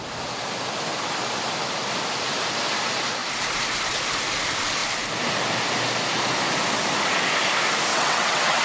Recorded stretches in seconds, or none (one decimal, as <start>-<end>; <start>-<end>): 0.0-7.9